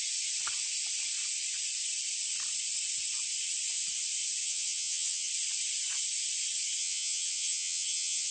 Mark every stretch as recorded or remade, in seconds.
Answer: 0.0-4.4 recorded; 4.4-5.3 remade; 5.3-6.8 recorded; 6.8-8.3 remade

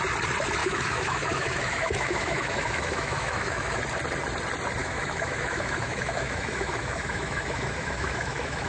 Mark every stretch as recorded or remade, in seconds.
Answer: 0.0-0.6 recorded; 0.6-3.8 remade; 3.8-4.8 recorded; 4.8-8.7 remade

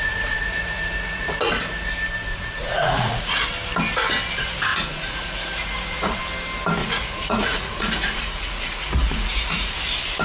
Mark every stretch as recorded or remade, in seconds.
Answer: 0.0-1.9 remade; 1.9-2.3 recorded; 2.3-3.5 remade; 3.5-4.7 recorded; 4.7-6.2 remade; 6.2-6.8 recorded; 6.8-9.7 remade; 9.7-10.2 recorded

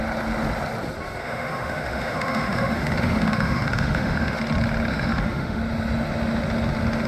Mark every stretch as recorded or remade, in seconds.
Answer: 0.0-1.2 recorded; 1.2-4.4 remade; 4.4-4.9 recorded; 4.9-5.6 remade; 5.6-7.1 recorded